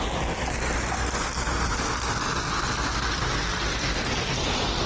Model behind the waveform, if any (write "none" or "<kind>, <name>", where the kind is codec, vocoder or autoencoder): none